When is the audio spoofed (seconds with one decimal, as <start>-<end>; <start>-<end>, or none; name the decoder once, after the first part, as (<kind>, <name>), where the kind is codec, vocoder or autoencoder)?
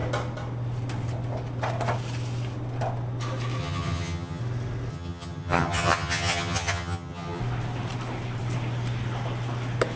3.6-4.4 (vocoder, HiFi-GAN); 4.9-7.4